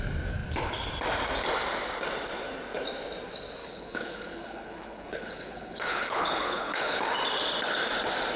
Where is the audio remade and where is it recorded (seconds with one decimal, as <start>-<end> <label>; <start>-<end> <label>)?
0.0-3.6 recorded; 3.6-7.0 remade; 7.0-8.4 recorded